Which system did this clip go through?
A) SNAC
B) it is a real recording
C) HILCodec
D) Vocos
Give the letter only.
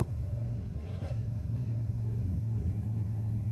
A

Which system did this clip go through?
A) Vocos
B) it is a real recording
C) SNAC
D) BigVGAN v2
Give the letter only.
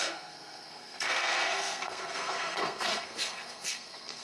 C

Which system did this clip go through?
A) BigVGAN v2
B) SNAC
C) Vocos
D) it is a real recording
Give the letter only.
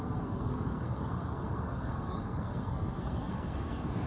B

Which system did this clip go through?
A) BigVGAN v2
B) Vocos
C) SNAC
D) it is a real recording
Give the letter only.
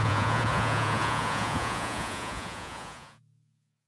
B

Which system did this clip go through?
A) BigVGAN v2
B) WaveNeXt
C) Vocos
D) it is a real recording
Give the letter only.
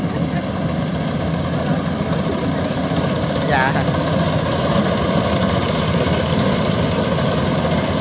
D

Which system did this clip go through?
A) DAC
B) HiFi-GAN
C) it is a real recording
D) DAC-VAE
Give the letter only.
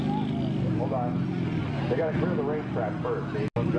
C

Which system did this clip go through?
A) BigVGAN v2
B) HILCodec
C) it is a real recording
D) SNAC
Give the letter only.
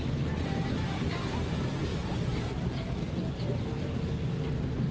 C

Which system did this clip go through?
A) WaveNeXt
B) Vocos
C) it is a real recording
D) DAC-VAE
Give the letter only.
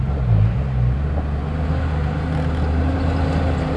C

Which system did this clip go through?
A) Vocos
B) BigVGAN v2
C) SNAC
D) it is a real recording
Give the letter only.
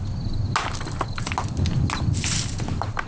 D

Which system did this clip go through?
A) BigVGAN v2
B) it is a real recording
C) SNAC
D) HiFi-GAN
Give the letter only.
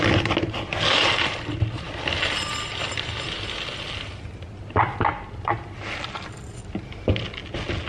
B